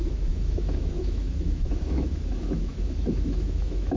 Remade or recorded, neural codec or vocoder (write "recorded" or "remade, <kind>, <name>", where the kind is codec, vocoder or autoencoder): remade, autoencoder, DAC-VAE